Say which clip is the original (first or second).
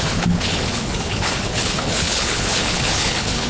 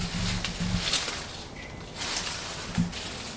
second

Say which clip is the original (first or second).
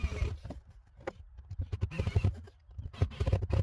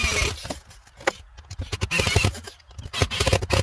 second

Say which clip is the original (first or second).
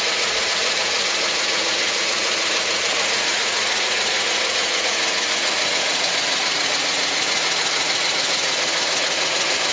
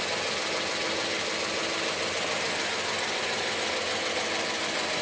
second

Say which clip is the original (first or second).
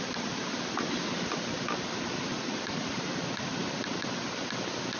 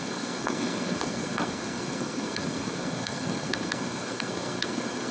first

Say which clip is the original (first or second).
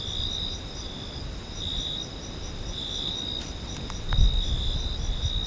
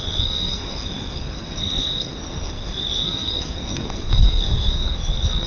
first